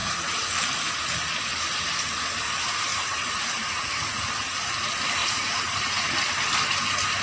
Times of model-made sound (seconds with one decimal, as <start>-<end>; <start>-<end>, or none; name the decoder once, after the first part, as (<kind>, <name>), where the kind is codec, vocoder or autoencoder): 0.0-0.5 (vocoder, Vocos); 2.9-4.2; 5.2-6.1